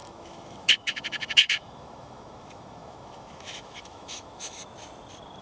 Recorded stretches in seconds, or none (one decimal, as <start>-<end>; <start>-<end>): 4.6-5.4